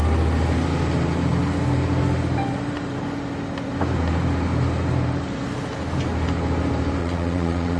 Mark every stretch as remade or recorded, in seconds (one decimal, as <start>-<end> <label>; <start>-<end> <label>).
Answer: 0.0-7.0 recorded; 7.0-7.8 remade